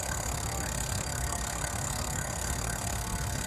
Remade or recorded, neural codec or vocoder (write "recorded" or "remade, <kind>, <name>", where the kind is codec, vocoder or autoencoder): remade, codec, SNAC